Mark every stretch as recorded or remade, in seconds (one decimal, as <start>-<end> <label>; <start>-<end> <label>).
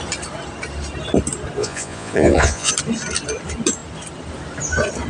0.0-1.6 recorded; 1.6-2.7 remade; 2.7-5.1 recorded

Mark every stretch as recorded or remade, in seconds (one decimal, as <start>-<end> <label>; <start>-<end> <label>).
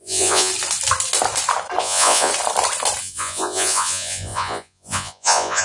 0.0-0.5 remade; 0.5-1.8 recorded; 1.8-2.3 remade; 2.3-3.0 recorded; 3.0-5.6 remade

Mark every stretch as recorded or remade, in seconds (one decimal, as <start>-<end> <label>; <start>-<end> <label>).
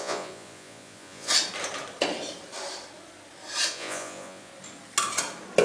0.0-1.3 remade; 1.3-3.7 recorded; 3.7-4.5 remade; 4.5-5.6 recorded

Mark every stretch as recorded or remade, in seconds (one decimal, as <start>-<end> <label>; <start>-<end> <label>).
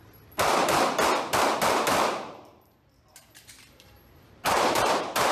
0.0-1.9 recorded; 1.9-5.3 remade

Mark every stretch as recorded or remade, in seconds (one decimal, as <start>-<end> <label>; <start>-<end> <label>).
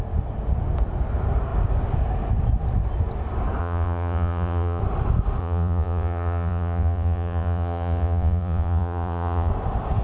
0.0-3.6 recorded; 3.6-4.8 remade; 4.8-5.4 recorded; 5.4-9.5 remade; 9.5-10.0 recorded